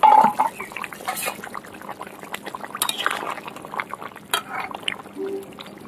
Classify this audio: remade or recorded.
recorded